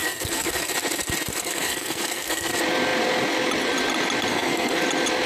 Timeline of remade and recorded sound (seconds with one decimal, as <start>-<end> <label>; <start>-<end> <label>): 0.0-0.7 remade; 0.7-1.3 recorded; 1.3-2.5 remade; 2.5-4.3 recorded; 4.3-4.8 remade; 4.8-5.3 recorded